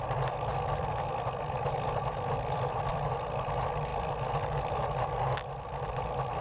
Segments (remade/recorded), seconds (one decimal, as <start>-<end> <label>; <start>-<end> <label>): 0.0-0.5 recorded; 0.5-2.9 remade; 2.9-3.9 recorded; 3.9-5.4 remade; 5.4-6.4 recorded